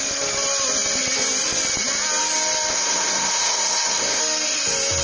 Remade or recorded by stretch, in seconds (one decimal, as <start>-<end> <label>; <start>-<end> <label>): 0.0-2.7 recorded; 2.7-4.2 remade; 4.2-5.0 recorded

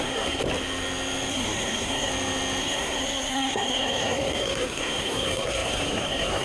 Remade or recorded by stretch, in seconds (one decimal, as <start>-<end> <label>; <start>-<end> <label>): 0.0-0.4 remade; 0.4-1.3 recorded; 1.3-2.1 remade; 2.1-2.6 recorded; 2.6-6.4 remade

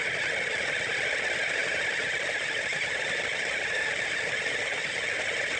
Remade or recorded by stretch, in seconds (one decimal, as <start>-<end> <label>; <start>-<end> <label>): 0.0-1.6 recorded; 1.6-3.8 remade; 3.8-5.6 recorded

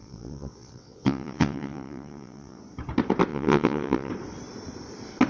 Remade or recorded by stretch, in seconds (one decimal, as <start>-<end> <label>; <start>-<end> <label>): 0.0-2.6 remade; 2.6-3.3 recorded; 3.3-4.1 remade; 4.1-5.3 recorded

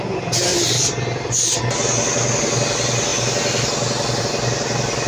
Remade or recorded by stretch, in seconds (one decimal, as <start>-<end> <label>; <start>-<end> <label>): 0.0-5.1 recorded